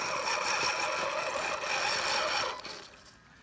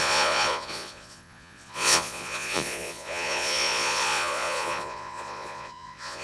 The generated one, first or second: second